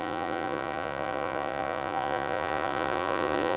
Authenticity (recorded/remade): remade